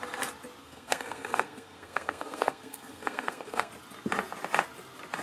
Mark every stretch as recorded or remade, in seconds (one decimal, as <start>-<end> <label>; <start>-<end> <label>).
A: 0.0-0.6 recorded; 0.6-3.7 remade; 3.7-5.2 recorded